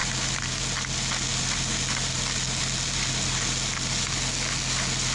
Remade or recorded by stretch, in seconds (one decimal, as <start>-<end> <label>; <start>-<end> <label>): 0.0-5.1 recorded